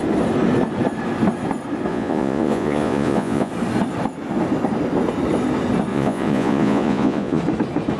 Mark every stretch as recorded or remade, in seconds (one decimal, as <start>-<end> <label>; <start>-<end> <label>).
0.0-1.9 recorded; 1.9-3.5 remade; 3.5-5.9 recorded; 5.9-7.4 remade; 7.4-8.0 recorded